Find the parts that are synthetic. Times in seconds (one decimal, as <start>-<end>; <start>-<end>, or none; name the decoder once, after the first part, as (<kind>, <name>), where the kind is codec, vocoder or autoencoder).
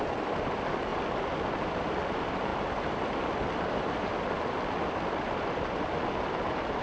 0.9-2.0 (vocoder, BigVGAN v2)